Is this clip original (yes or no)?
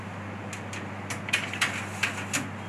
yes